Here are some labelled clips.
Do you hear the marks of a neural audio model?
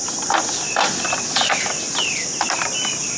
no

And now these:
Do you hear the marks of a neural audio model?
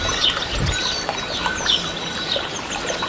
no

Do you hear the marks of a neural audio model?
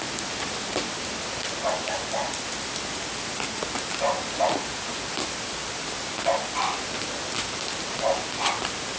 no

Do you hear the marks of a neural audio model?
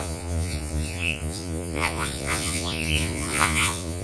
yes